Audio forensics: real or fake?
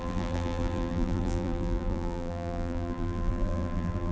fake